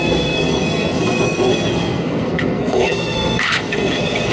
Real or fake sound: fake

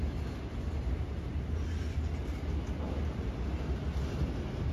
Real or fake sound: real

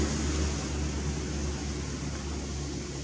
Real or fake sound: real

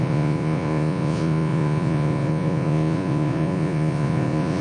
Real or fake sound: fake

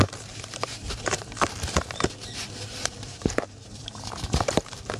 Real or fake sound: fake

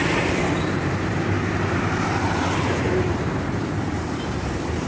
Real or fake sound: fake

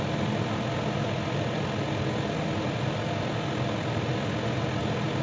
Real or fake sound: real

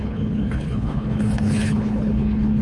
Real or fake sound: fake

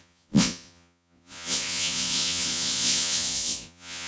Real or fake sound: fake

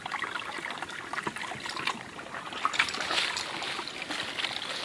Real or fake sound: real